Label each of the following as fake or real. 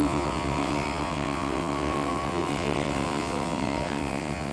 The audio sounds fake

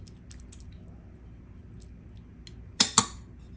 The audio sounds real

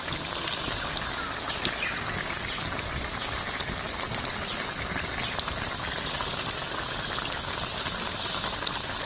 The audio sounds real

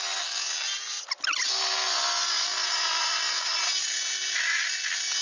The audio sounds real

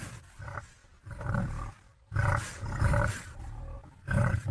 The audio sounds real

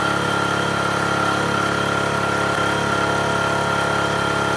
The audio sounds real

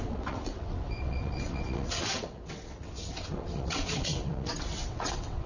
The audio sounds fake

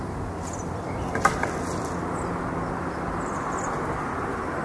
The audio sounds real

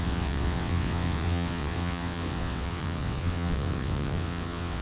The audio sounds fake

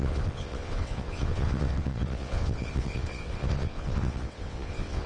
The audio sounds fake